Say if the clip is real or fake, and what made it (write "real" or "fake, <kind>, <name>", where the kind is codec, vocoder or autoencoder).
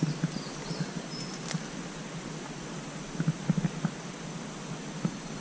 real